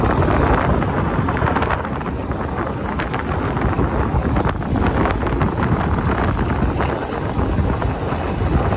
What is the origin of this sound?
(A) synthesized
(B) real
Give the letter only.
B